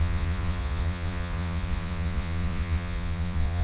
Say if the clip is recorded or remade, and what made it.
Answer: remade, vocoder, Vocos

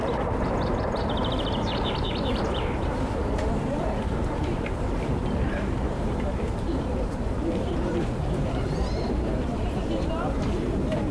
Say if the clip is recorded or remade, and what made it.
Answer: remade, vocoder, BigVGAN v2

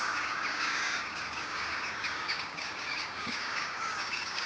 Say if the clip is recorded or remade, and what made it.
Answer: remade, codec, DAC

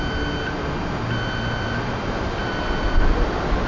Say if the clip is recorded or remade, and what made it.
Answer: recorded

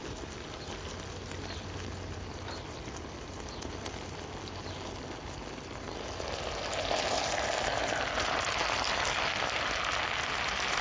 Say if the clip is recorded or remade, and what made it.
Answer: recorded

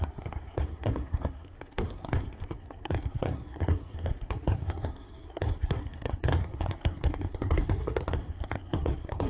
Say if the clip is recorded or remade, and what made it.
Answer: remade, codec, SNAC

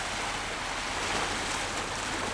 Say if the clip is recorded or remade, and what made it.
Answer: recorded